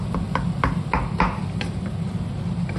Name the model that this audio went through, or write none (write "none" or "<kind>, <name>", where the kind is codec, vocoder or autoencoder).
none